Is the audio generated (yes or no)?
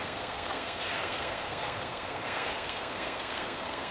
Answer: yes